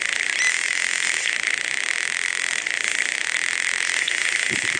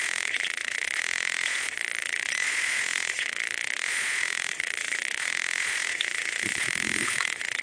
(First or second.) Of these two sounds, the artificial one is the second